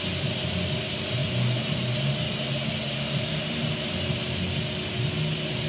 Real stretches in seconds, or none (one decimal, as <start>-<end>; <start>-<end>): 0.0-5.7